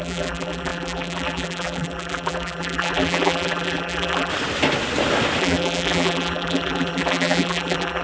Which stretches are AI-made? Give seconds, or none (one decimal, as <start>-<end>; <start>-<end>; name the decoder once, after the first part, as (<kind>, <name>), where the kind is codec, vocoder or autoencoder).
0.0-4.3 (vocoder, BigVGAN v2); 5.4-8.0